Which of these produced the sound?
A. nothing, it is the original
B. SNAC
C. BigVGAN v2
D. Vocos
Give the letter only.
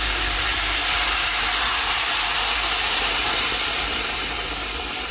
C